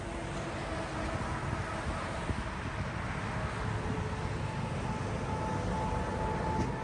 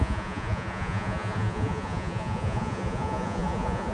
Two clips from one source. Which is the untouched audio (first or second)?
first